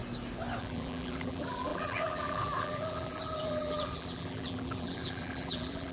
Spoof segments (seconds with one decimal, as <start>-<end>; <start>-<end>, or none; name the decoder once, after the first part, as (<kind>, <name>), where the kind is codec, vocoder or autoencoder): 0.6-5.9 (vocoder, BigVGAN v2)